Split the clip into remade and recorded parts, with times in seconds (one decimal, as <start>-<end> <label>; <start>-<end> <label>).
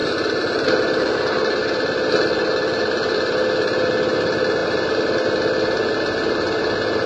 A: 0.0-7.1 recorded